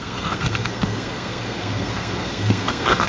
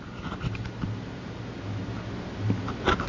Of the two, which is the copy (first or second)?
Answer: first